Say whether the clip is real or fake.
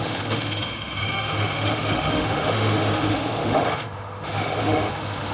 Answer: fake